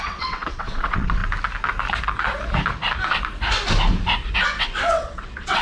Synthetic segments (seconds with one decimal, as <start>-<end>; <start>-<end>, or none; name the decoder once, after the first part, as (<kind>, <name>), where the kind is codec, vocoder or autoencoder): 0.0-1.2 (vocoder, WaveNeXt); 4.6-5.6